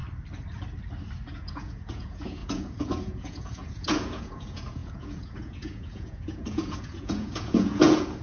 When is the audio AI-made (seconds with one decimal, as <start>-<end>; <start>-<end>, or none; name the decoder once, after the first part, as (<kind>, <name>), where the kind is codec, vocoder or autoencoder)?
1.3-8.2 (vocoder, Vocos)